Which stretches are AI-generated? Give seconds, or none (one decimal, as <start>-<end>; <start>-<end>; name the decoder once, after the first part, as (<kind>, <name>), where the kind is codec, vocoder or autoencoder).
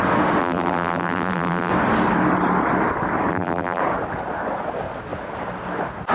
0.4-1.7 (vocoder, BigVGAN v2); 3.3-3.8